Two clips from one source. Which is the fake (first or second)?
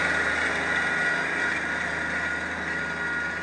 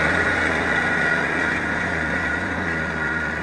second